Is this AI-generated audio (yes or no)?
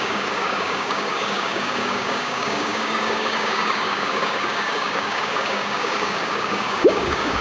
yes